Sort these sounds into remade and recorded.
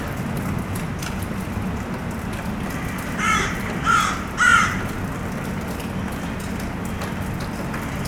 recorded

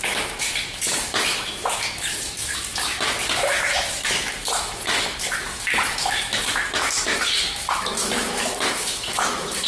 remade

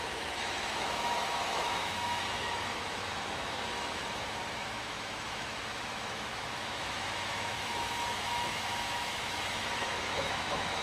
remade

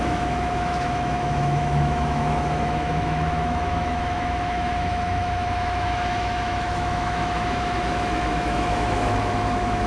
remade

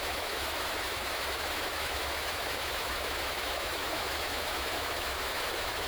remade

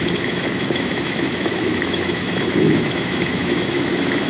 remade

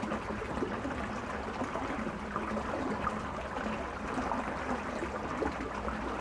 recorded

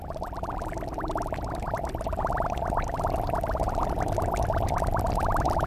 recorded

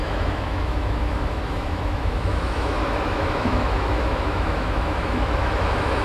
remade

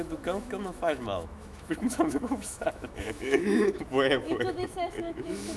remade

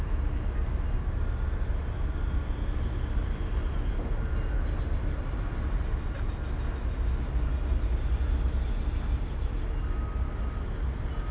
recorded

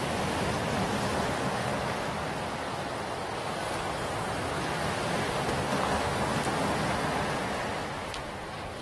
recorded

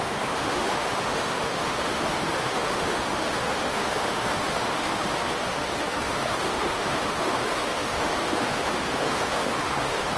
remade